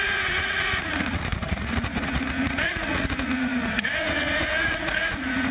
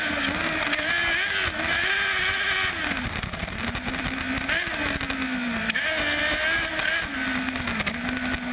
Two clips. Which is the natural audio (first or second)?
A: second